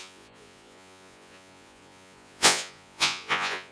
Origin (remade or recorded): remade